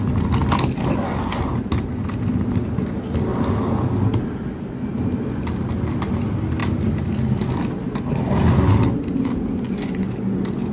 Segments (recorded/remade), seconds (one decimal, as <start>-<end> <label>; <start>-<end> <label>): 0.0-10.7 recorded